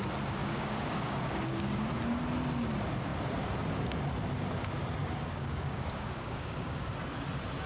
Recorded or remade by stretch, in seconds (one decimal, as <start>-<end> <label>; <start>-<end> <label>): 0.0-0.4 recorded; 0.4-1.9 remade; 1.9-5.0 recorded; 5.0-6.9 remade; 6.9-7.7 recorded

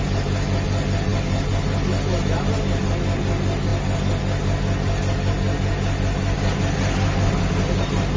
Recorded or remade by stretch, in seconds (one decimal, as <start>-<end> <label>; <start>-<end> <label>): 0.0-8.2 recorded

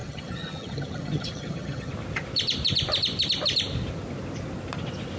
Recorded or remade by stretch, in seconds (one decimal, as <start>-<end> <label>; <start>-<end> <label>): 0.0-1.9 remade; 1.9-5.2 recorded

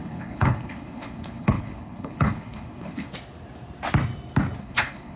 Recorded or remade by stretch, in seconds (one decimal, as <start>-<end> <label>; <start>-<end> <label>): 0.0-3.1 remade; 3.1-4.6 recorded; 4.6-5.2 remade

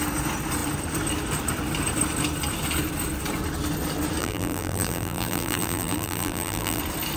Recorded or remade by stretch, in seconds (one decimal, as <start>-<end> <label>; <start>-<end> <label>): 0.0-4.2 recorded; 4.2-6.8 remade; 6.8-7.2 recorded

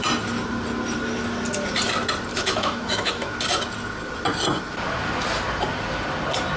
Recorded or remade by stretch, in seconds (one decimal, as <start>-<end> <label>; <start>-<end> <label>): 0.0-2.3 recorded; 2.3-3.3 remade; 3.3-6.6 recorded